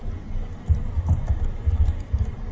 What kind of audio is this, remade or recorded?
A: recorded